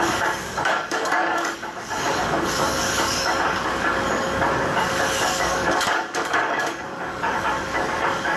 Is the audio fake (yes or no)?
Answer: yes